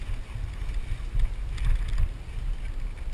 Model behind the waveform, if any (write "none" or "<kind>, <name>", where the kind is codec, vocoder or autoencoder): none